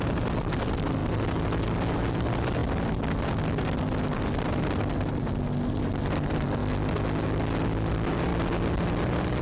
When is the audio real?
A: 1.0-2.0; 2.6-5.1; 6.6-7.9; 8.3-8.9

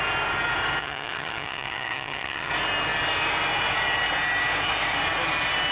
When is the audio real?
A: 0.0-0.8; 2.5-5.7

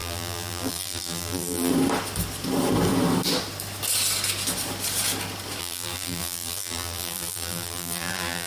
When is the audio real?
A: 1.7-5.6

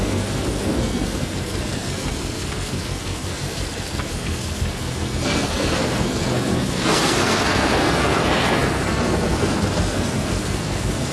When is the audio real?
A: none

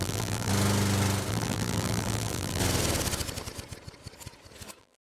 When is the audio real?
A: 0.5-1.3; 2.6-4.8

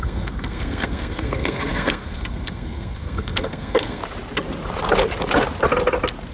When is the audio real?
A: 4.0-6.3

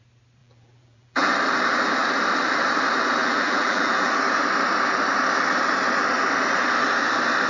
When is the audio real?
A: 0.0-0.4; 1.3-3.2; 4.1-7.5

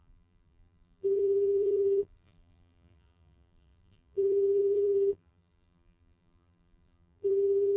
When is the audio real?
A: none